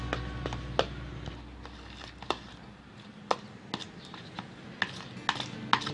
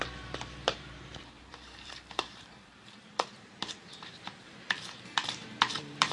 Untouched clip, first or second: first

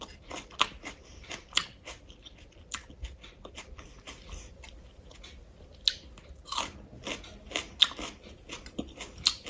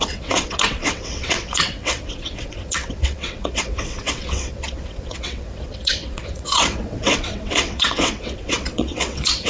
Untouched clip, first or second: first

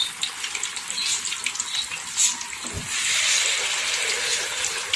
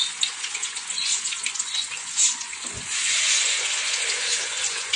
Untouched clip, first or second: first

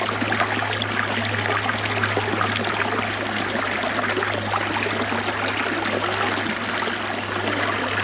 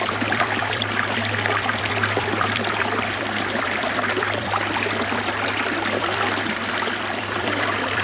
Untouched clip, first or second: first